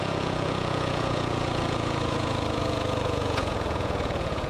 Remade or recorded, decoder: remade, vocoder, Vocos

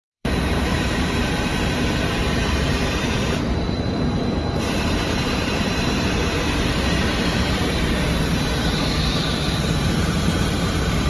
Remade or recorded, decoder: remade, vocoder, BigVGAN v2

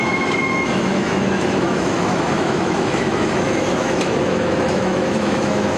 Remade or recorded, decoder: remade, autoencoder, DAC-VAE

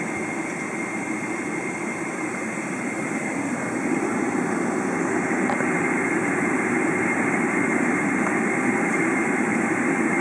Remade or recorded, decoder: remade, vocoder, BigVGAN v2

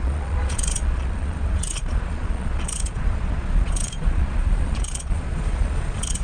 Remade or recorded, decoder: remade, vocoder, Vocos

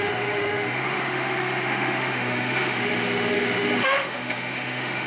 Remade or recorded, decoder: remade, autoencoder, DAC-VAE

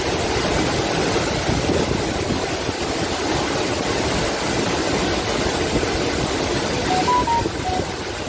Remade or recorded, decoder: recorded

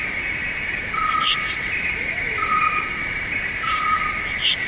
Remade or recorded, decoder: remade, vocoder, BigVGAN v2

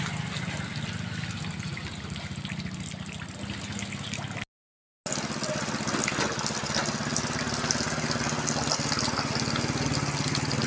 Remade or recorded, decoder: recorded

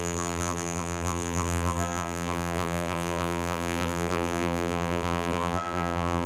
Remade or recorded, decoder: remade, vocoder, BigVGAN v2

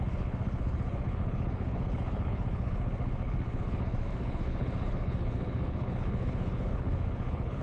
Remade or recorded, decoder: remade, codec, HILCodec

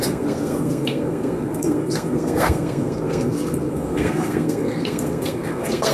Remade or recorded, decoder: remade, codec, SNAC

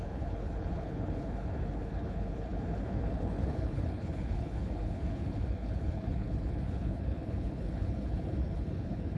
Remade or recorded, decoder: remade, codec, HILCodec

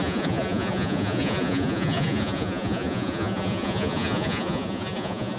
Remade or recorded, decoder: remade, vocoder, Vocos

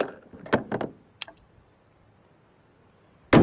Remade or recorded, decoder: recorded